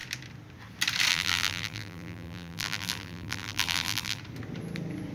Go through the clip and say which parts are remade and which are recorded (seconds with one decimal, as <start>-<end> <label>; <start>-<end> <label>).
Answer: 0.0-1.1 recorded; 1.1-4.2 remade; 4.2-5.1 recorded